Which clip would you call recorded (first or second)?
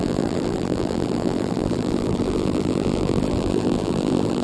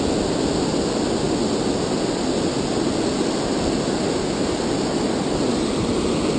second